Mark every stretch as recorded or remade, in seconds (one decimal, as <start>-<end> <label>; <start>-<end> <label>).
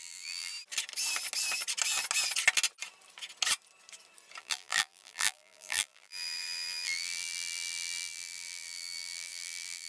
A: 0.0-0.5 remade; 0.5-4.4 recorded; 4.4-9.9 remade